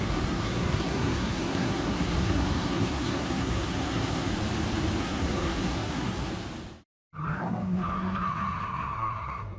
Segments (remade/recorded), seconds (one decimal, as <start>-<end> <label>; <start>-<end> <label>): 0.0-4.3 remade; 4.3-5.0 recorded; 5.0-6.3 remade; 6.3-7.2 recorded; 7.2-9.6 remade